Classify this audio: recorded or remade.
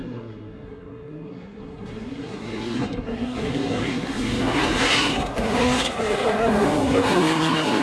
remade